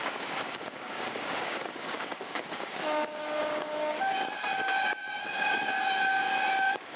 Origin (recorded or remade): remade